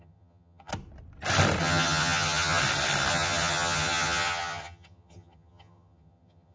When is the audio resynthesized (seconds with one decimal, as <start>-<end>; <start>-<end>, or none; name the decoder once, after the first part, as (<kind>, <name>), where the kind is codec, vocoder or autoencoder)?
0.0-0.7 (vocoder, HiFi-GAN); 1.6-2.6; 3.1-6.5